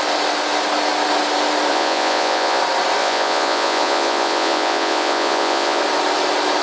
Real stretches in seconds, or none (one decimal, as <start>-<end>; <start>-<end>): 0.0-1.7; 2.6-3.0; 5.8-6.6